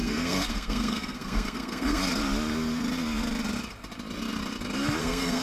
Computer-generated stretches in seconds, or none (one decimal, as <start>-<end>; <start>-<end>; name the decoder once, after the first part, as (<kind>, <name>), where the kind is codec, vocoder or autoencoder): 0.0-2.0 (codec, SNAC); 5.0-5.4